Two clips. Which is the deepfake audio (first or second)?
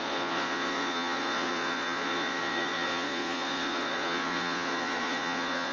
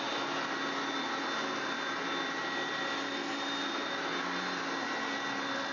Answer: first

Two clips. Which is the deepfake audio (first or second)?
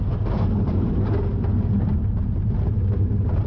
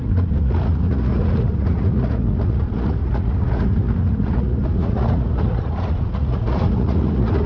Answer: second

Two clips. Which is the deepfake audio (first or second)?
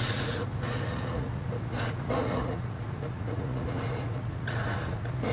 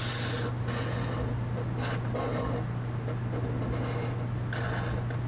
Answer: first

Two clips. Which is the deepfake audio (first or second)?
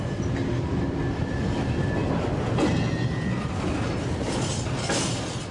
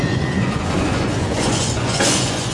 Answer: second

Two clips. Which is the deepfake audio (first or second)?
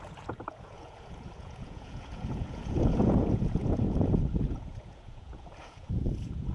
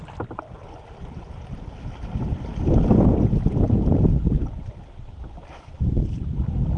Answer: first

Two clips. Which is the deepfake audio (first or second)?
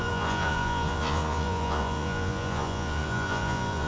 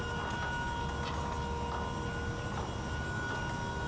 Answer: first